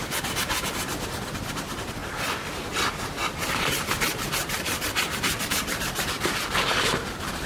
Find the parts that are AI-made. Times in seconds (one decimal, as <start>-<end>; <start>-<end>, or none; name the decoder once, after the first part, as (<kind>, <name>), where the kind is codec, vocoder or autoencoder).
2.0-2.8 (vocoder, BigVGAN v2); 3.2-6.2